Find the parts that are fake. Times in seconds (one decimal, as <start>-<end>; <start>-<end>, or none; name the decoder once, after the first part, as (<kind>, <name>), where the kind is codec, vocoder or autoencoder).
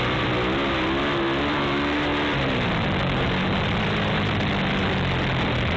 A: none